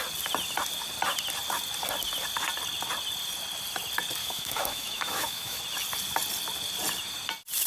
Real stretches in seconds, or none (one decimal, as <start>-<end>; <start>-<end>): 0.0-4.2; 5.6-7.7